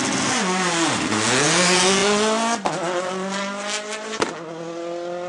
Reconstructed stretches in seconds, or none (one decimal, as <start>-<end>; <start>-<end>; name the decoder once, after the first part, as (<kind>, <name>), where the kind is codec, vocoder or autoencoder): none